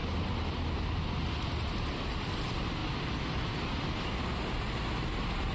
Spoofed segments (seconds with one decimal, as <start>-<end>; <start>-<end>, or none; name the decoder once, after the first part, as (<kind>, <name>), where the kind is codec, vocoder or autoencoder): none

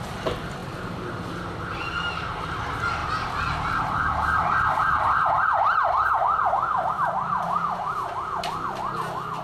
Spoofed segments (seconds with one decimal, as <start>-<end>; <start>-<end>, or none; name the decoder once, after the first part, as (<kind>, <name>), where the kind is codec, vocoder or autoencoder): none

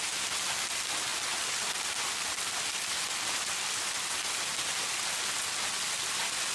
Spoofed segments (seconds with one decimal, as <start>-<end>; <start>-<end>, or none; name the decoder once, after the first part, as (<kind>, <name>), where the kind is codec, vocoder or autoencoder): none

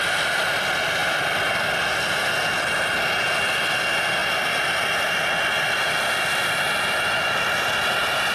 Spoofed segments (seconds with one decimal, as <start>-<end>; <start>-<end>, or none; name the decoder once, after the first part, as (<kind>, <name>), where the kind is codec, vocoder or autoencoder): none

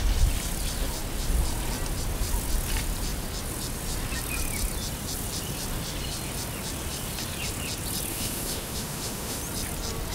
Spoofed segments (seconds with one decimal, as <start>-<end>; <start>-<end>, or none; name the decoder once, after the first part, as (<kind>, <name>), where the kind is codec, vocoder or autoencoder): 8.1-9.4 (autoencoder, DAC-VAE)

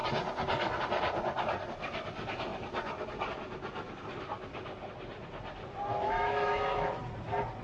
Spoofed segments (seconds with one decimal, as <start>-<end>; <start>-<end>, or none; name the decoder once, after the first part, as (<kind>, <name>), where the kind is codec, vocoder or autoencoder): 5.9-7.0 (autoencoder, DAC-VAE)

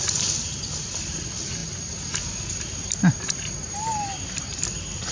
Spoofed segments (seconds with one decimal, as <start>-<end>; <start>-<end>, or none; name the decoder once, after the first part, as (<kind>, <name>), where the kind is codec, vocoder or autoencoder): none

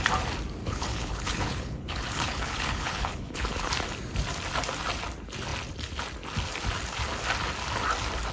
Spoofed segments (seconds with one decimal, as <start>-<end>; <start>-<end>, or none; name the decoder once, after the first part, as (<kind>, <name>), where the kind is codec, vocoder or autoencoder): 0.6-3.7 (codec, HILCodec)